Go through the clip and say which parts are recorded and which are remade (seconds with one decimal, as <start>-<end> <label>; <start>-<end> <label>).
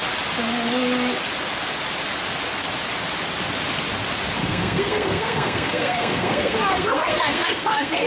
0.0-4.4 recorded; 4.4-8.1 remade